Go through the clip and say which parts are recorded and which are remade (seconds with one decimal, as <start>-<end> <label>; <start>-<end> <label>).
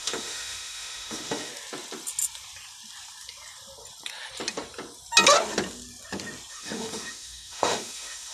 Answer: 0.0-1.5 remade; 1.5-6.5 recorded; 6.5-8.3 remade